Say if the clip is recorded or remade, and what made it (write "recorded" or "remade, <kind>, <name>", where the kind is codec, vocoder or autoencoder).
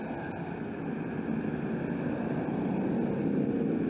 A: recorded